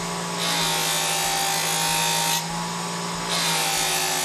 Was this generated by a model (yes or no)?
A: no